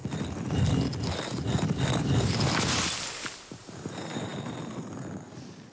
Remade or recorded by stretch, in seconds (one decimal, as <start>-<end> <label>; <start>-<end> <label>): 0.0-5.7 recorded